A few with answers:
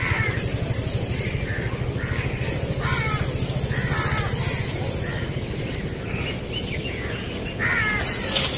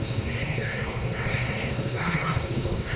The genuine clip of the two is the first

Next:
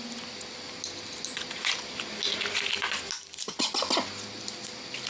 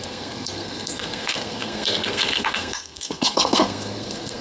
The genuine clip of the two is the first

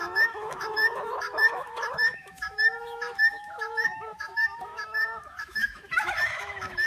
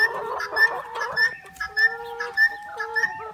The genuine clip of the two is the second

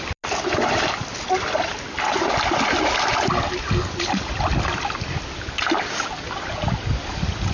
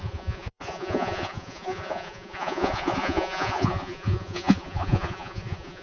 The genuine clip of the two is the first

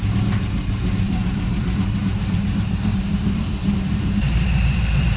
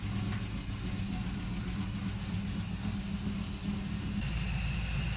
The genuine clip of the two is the second